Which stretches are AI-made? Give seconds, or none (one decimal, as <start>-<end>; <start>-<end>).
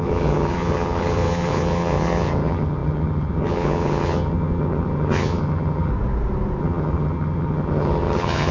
0.0-5.9; 6.6-8.5